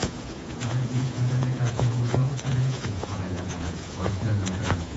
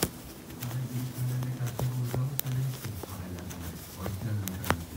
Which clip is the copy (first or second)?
first